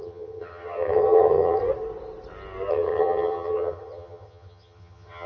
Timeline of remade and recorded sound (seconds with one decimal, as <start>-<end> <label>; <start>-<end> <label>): 0.0-1.6 remade; 1.6-2.7 recorded; 2.7-5.3 remade